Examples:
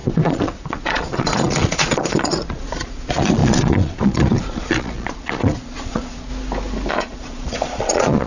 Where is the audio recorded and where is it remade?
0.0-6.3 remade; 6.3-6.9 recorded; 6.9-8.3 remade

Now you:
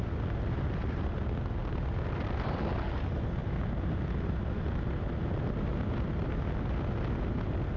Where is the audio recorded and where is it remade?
0.0-7.8 recorded

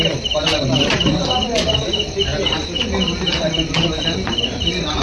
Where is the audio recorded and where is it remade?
0.0-5.0 recorded

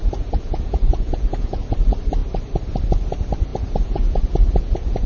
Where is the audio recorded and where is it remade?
0.0-1.6 remade; 1.6-3.5 recorded; 3.5-5.1 remade

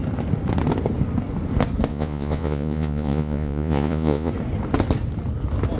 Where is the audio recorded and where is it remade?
0.0-1.9 recorded; 1.9-4.3 remade; 4.3-5.8 recorded